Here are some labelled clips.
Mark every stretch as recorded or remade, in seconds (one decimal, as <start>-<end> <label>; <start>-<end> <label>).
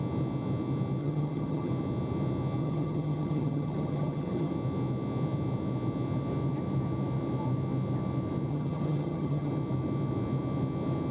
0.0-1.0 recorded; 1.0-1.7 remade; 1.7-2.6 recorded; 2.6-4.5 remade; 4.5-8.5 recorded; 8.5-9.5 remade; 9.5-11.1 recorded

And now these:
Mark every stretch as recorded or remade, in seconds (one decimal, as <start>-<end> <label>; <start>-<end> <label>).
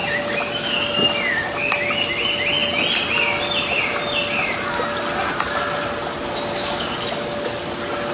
0.0-8.1 recorded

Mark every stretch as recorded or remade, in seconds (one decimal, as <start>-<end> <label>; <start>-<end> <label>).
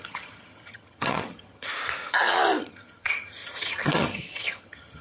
0.0-1.7 remade; 1.7-2.6 recorded; 2.6-5.0 remade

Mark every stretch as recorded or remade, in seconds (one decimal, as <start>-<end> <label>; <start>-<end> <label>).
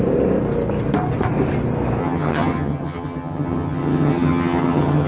0.0-2.0 recorded; 2.0-5.1 remade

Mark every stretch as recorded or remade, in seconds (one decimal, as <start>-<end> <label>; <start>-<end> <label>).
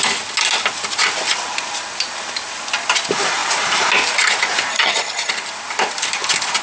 0.0-4.7 recorded; 4.7-5.3 remade; 5.3-6.6 recorded